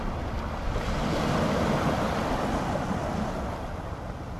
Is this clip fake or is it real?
real